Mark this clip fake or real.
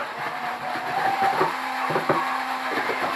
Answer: fake